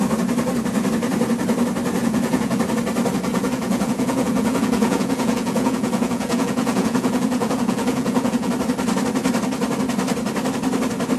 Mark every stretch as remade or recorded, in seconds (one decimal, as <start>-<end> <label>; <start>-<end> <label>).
0.0-2.0 recorded; 2.0-2.6 remade; 2.6-3.3 recorded; 3.3-8.5 remade; 8.5-11.2 recorded